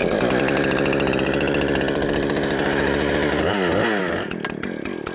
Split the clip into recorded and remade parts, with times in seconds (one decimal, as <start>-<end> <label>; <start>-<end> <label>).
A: 0.0-5.1 recorded

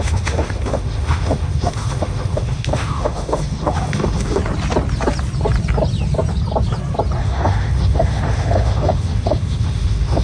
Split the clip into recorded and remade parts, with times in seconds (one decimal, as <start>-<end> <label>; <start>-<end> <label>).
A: 0.0-4.4 remade; 4.4-7.2 recorded; 7.2-10.2 remade

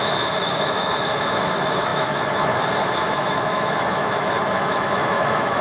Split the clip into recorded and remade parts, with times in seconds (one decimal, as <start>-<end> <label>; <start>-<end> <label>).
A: 0.0-5.6 remade

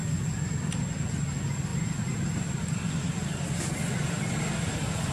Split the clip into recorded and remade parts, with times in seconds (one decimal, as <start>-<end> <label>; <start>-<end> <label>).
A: 0.0-5.1 recorded

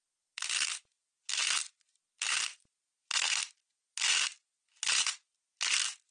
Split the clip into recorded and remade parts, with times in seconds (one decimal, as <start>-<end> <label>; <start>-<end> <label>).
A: 0.0-6.1 recorded

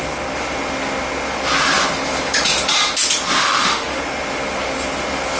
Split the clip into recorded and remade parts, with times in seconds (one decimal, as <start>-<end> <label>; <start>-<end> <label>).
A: 0.0-3.4 recorded; 3.4-4.0 remade; 4.0-5.4 recorded